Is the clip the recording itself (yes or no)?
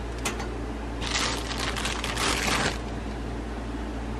yes